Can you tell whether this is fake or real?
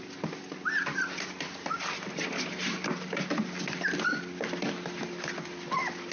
real